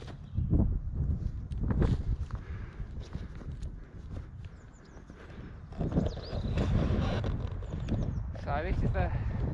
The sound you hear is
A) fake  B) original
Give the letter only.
B